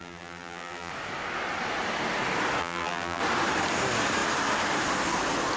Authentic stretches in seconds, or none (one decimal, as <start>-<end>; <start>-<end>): 0.9-2.6; 3.2-5.6